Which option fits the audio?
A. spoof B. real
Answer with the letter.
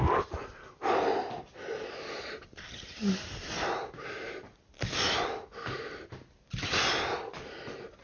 B